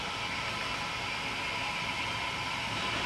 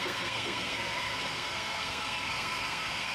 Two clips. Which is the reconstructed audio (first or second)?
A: second